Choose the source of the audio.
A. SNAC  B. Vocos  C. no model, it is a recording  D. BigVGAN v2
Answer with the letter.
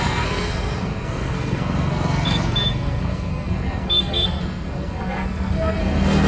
A